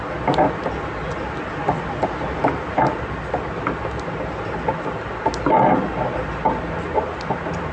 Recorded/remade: recorded